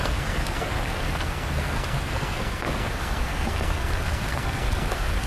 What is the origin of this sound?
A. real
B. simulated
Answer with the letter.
B